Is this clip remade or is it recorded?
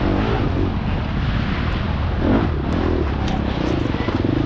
recorded